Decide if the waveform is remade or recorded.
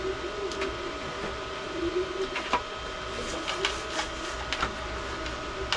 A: recorded